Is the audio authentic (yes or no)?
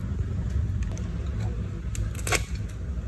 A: yes